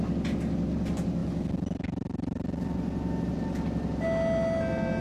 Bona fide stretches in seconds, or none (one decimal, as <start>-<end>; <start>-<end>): 0.0-5.0